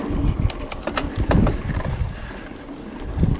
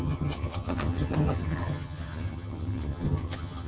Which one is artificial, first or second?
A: second